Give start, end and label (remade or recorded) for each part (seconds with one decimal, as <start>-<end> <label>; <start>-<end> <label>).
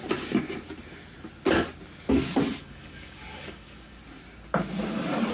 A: 0.0-2.6 recorded; 2.6-4.0 remade; 4.0-5.3 recorded